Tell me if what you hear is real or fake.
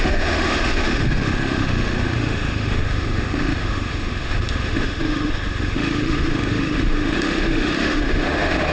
fake